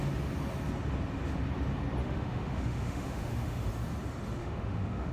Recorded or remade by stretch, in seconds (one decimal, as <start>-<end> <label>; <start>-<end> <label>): 0.0-2.0 recorded; 2.0-3.7 remade; 3.7-4.4 recorded; 4.4-5.1 remade